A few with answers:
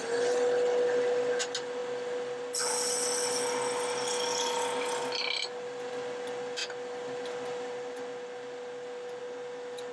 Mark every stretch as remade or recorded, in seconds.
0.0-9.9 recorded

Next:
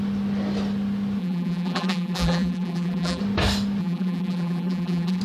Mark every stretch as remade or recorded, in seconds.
0.0-1.2 recorded; 1.2-3.2 remade; 3.2-3.8 recorded; 3.8-5.2 remade